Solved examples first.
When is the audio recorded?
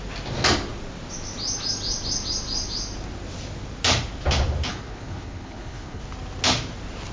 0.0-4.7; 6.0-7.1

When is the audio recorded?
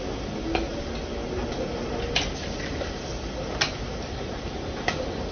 0.0-5.3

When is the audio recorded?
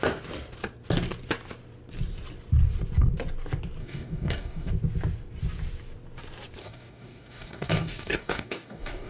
0.0-3.8; 4.7-6.6